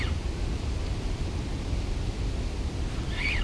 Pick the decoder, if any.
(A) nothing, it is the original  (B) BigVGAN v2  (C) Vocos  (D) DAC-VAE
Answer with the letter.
A